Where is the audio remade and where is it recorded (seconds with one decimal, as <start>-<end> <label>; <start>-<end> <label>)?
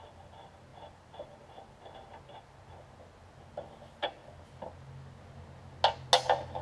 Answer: 0.0-6.6 recorded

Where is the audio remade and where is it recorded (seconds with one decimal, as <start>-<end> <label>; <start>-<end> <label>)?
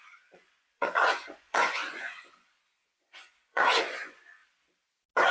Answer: 0.0-4.4 remade; 4.4-5.3 recorded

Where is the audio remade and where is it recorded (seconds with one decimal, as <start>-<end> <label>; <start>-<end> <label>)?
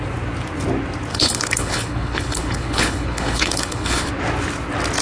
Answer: 0.0-1.1 recorded; 1.1-4.1 remade; 4.1-5.0 recorded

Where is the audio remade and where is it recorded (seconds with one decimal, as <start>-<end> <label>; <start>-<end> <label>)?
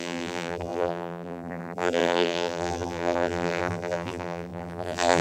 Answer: 0.0-5.2 remade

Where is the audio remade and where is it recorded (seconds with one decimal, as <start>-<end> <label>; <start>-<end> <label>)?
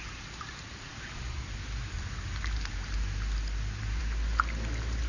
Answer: 0.0-5.1 recorded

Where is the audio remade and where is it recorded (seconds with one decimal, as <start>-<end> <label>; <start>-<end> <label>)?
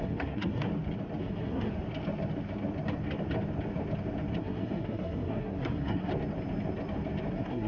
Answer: 0.0-0.7 remade; 0.7-1.2 recorded; 1.2-1.7 remade; 1.7-4.4 recorded; 4.4-6.1 remade; 6.1-7.3 recorded; 7.3-7.7 remade